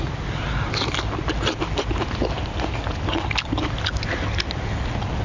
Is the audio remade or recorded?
recorded